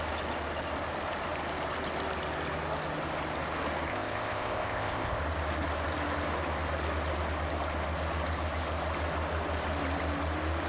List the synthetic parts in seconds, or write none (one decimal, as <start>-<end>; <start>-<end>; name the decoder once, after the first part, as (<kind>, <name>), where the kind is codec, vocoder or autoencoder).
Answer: 3.9-5.2 (codec, ZipCodec)